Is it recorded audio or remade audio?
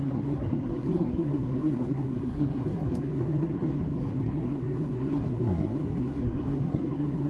remade